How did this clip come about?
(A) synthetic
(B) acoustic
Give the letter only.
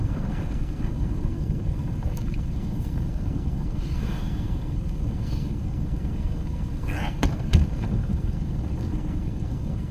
A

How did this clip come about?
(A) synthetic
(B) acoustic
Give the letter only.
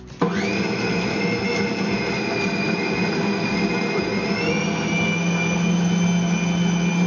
B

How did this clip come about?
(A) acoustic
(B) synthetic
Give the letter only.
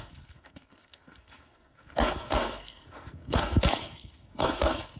B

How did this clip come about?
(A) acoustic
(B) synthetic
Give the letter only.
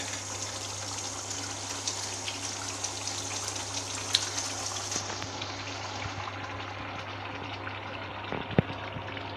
A